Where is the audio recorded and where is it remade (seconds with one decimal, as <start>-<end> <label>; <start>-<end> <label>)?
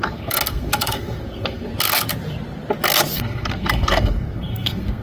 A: 0.0-1.7 remade; 1.7-3.1 recorded; 3.1-5.0 remade